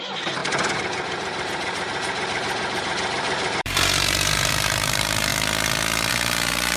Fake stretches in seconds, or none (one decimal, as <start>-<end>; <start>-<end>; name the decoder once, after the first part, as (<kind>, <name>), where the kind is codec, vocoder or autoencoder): 0.0-5.3 (vocoder, BigVGAN v2); 6.1-6.8